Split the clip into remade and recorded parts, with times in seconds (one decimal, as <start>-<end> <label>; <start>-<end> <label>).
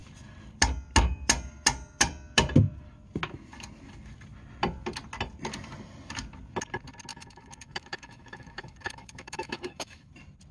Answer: 0.0-7.1 recorded; 7.1-10.1 remade; 10.1-10.5 recorded